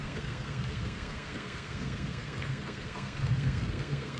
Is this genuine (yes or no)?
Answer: no